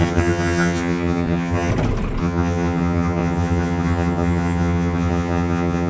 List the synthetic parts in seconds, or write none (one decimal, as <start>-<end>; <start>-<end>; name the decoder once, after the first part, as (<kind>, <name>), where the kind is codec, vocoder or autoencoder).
0.0-1.7 (vocoder, HiFi-GAN); 2.2-5.9